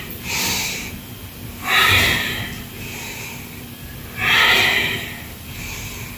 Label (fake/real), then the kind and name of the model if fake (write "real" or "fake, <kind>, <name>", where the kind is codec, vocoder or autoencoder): real